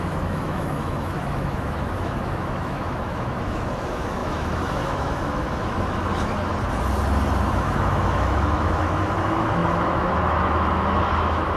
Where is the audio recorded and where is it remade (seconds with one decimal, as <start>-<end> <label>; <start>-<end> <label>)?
0.0-6.5 remade; 6.5-7.5 recorded; 7.5-11.6 remade